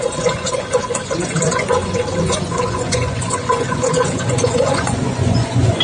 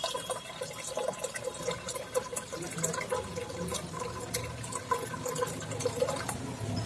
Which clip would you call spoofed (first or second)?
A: first